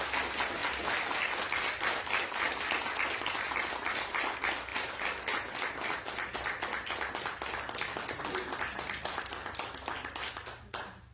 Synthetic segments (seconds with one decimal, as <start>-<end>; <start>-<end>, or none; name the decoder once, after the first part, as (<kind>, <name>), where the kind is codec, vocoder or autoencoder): none